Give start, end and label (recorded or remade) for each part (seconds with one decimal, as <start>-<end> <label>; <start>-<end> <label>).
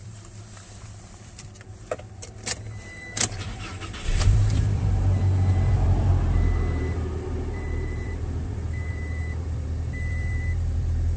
0.0-11.2 remade